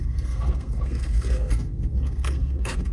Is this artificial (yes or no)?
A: yes